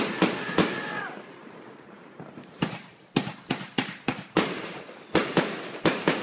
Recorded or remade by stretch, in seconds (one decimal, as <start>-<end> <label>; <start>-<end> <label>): 0.0-1.4 recorded; 1.4-5.0 remade; 5.0-6.2 recorded